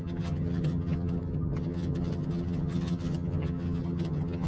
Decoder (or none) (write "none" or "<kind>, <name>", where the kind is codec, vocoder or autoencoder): vocoder, HiFi-GAN